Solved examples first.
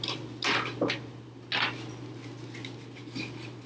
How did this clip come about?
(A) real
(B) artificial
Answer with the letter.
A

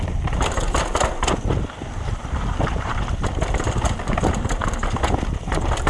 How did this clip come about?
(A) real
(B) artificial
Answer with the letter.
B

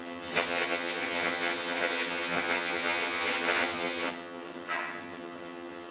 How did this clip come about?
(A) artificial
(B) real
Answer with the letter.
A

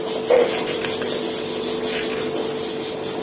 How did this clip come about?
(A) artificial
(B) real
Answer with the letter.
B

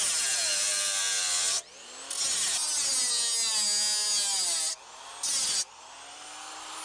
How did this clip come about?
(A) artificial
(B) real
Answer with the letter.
B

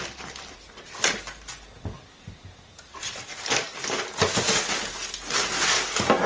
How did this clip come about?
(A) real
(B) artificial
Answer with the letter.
A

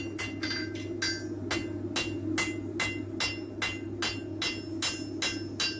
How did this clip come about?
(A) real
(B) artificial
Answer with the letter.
A